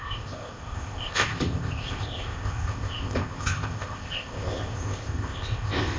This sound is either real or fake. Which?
fake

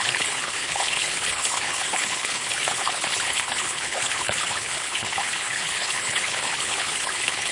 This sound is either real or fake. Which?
fake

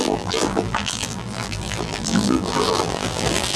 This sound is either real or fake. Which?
fake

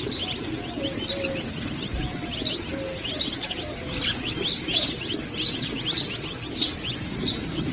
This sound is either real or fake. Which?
real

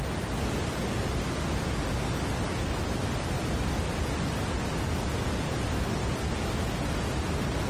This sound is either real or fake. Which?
real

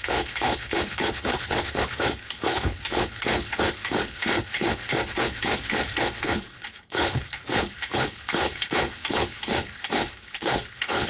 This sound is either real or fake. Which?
fake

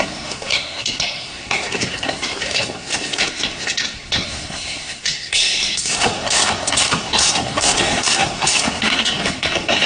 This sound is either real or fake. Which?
fake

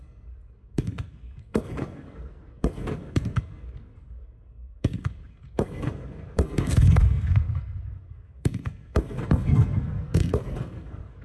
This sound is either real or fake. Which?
fake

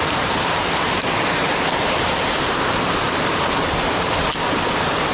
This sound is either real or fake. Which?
real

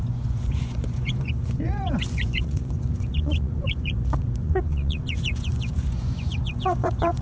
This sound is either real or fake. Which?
fake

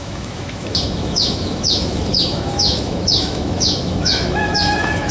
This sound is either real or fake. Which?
fake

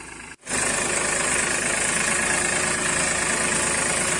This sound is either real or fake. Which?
real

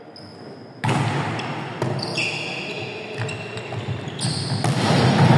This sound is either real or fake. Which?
real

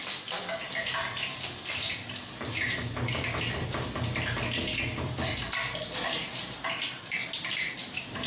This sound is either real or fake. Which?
real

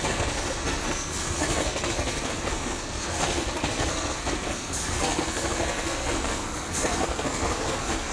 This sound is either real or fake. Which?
fake